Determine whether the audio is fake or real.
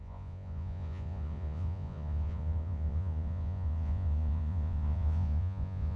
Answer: fake